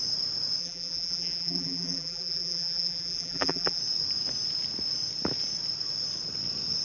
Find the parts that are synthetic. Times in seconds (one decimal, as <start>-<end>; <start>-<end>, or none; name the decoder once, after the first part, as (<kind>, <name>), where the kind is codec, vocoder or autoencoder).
0.6-3.8 (vocoder, BigVGAN v2)